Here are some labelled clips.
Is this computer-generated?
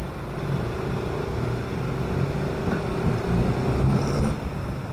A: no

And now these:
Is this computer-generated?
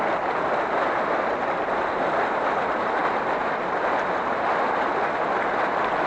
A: no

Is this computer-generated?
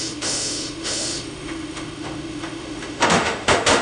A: yes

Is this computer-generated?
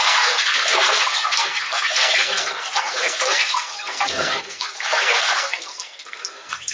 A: yes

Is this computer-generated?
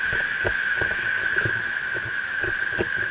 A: yes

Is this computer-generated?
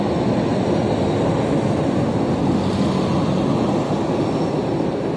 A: no